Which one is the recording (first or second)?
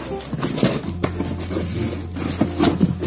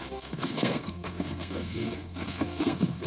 first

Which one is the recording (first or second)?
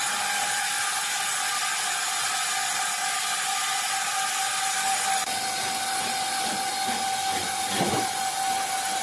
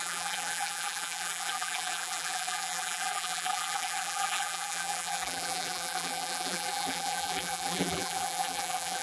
first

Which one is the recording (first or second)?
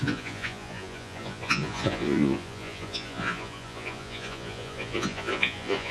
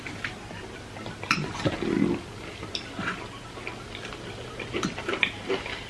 second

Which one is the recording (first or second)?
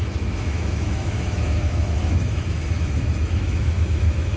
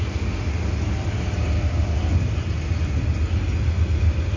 second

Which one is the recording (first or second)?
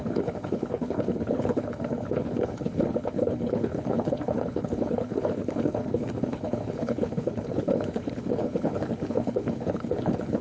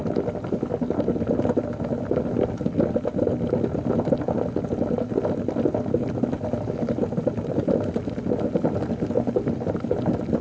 second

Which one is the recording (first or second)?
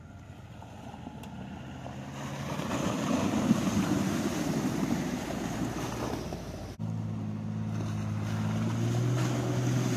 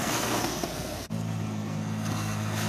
first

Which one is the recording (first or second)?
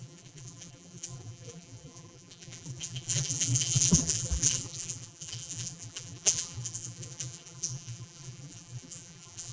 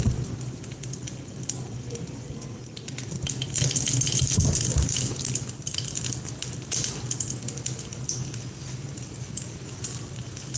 second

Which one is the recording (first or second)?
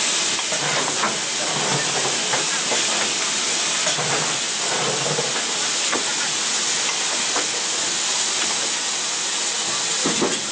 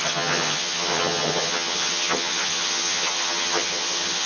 first